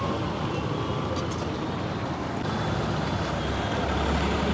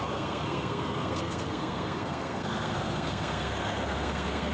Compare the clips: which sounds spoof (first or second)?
second